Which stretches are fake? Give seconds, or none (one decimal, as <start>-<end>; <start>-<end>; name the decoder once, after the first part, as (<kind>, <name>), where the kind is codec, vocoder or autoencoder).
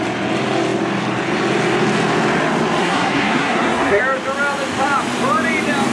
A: 2.8-4.0 (codec, SNAC)